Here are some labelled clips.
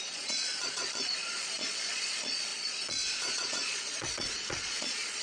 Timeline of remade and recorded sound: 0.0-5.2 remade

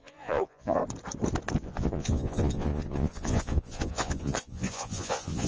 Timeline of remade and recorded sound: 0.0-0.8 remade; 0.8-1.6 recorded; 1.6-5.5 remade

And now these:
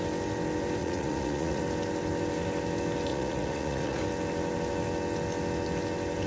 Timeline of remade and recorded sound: 0.0-0.8 recorded; 0.8-1.6 remade; 1.6-3.1 recorded; 3.1-4.0 remade; 4.0-6.3 recorded

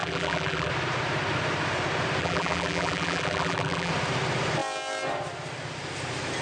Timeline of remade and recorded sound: 0.0-0.7 remade; 0.7-2.2 recorded; 2.2-3.9 remade; 3.9-6.4 recorded

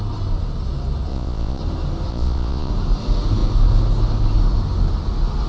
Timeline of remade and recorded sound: 0.0-1.1 recorded; 1.1-1.6 remade; 1.6-2.1 recorded; 2.1-2.7 remade; 2.7-5.5 recorded